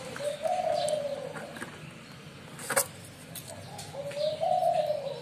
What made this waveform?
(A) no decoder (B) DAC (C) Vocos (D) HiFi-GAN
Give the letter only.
A